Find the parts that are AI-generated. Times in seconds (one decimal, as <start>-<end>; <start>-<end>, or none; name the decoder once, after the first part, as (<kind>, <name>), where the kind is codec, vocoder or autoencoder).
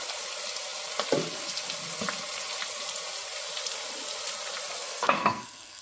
4.8-5.8 (codec, SNAC)